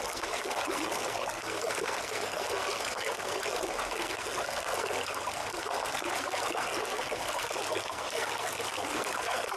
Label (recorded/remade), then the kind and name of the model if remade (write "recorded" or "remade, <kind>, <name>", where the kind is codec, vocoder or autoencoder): remade, codec, SNAC